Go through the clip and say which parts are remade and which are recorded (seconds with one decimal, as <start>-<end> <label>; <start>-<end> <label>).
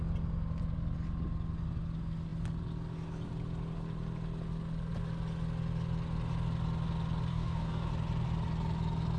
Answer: 0.0-7.3 recorded; 7.3-7.9 remade; 7.9-9.2 recorded